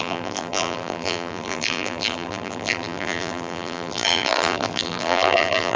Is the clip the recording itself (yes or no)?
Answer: no